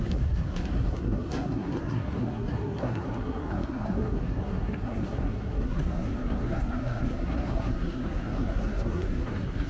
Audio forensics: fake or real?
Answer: fake